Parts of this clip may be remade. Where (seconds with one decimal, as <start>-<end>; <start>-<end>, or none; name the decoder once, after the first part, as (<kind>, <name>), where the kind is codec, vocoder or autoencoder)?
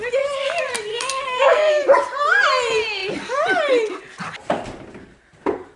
0.9-1.7 (codec, SNAC)